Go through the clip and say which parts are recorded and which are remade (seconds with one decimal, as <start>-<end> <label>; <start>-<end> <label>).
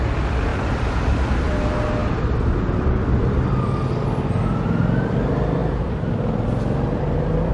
0.0-7.5 recorded